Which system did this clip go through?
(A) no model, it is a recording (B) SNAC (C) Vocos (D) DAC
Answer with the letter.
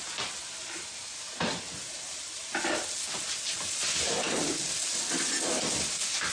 A